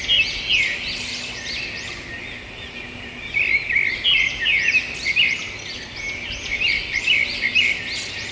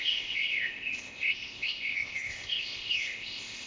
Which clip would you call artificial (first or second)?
second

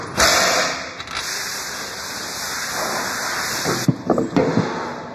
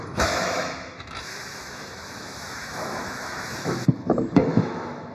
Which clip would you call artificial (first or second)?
second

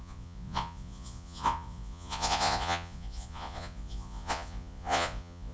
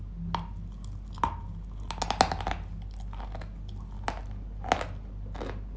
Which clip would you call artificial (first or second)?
first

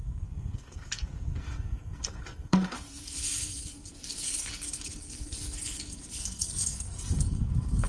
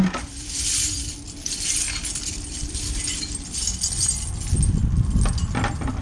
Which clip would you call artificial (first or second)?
first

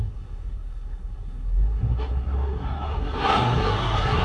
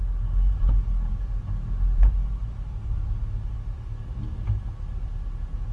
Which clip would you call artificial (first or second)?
first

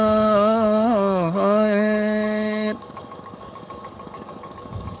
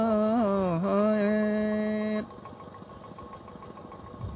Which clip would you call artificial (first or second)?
first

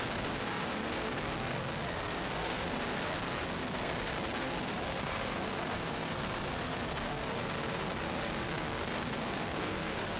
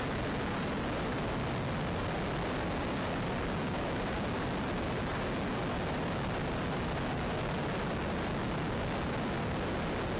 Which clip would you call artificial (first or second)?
first